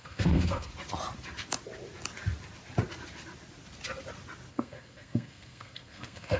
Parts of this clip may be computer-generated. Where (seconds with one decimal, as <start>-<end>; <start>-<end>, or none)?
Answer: 0.0-0.7; 4.5-6.4